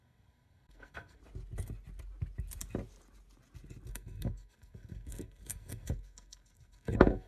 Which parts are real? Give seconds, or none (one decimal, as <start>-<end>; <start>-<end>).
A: 1.2-3.9